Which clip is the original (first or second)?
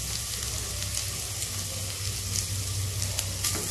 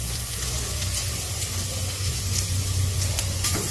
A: first